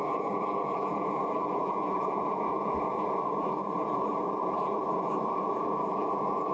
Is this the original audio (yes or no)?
no